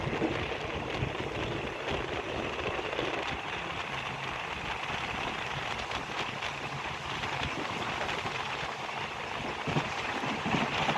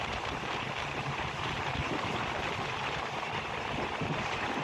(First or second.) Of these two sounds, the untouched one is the first